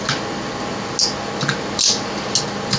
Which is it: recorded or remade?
recorded